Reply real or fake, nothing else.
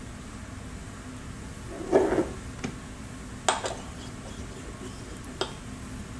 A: real